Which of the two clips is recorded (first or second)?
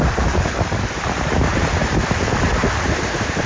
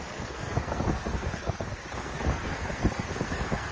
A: first